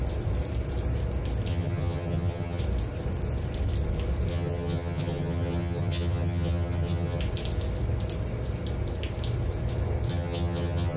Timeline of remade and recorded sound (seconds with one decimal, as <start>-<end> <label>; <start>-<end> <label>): 0.0-1.5 recorded; 1.5-2.6 remade; 2.6-4.3 recorded; 4.3-7.2 remade; 7.2-10.1 recorded; 10.1-11.0 remade